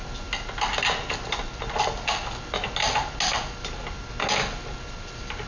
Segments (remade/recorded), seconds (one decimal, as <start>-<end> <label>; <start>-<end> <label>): 0.0-5.5 recorded